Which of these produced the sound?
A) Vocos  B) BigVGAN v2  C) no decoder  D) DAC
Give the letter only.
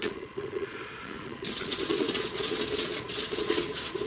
A